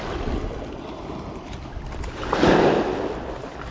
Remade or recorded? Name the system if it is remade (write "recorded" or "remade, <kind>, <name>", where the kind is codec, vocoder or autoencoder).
recorded